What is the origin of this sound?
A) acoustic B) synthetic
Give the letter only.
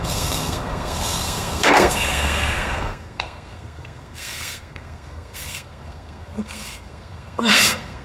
B